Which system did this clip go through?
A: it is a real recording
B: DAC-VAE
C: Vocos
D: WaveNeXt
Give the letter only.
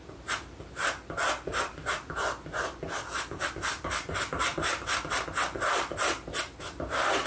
A